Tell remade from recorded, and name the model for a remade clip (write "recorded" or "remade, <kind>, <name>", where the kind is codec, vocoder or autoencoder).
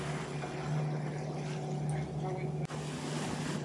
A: recorded